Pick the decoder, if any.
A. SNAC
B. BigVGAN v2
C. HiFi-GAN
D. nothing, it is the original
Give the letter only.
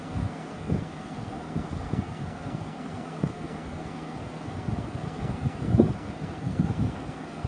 A